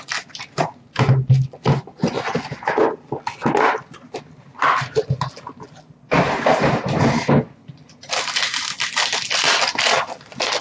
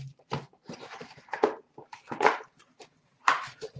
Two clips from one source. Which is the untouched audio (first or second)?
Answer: first